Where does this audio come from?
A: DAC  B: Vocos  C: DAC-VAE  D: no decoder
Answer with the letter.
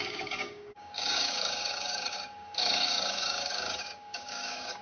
A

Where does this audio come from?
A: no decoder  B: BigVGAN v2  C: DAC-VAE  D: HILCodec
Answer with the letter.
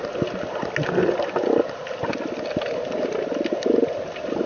A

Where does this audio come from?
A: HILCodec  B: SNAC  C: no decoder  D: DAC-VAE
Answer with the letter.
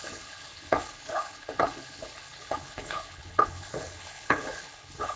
A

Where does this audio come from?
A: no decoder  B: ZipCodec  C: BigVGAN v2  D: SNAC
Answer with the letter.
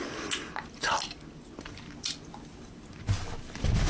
A